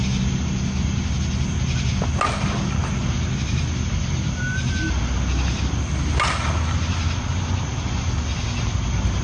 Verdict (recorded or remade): recorded